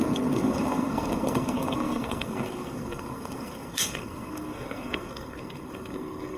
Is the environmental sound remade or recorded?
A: remade